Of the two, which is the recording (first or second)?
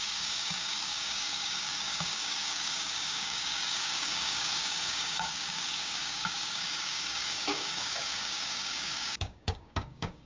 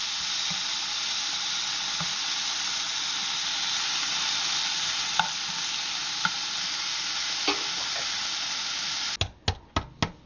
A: second